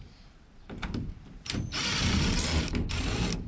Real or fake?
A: real